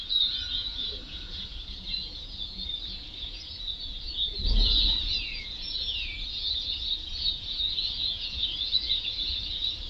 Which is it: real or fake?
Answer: fake